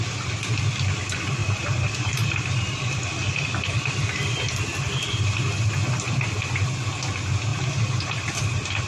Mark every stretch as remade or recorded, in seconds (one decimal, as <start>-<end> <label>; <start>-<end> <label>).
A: 0.0-1.4 recorded; 1.4-2.3 remade; 2.3-8.9 recorded